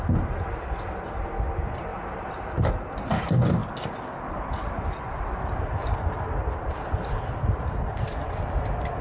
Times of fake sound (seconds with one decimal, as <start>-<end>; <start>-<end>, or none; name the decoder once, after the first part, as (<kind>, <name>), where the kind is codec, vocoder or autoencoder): 1.9-2.7 (vocoder, BigVGAN v2)